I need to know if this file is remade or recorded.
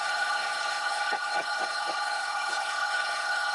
remade